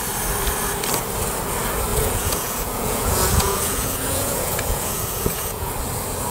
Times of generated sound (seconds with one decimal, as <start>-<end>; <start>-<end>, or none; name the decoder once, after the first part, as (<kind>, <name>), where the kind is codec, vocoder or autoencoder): 1.9-5.7 (vocoder, Vocos)